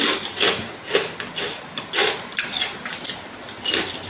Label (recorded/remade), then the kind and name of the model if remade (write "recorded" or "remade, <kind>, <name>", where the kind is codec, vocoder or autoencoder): recorded